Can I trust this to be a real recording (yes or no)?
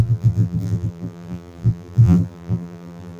no